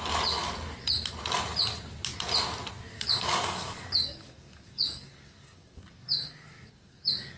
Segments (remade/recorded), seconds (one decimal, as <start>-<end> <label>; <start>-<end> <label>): 0.0-2.9 recorded; 2.9-7.4 remade